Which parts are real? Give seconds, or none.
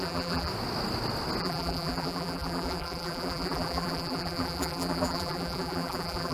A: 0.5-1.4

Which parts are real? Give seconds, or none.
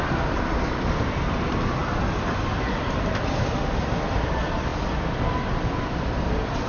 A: 1.8-2.7; 4.7-5.5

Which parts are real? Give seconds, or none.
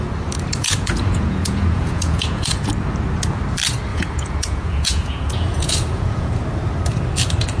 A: 0.0-0.6; 2.7-3.9; 6.3-7.6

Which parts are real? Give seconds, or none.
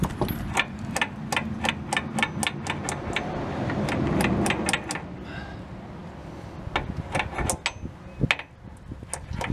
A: 0.0-9.5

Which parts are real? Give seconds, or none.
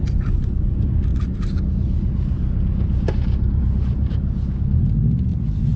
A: 0.0-1.1; 4.6-5.3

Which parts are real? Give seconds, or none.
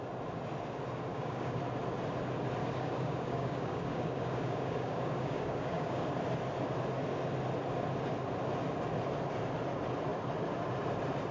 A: 0.0-1.1; 1.6-2.6; 6.1-11.3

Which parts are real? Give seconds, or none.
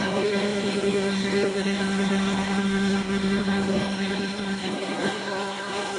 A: none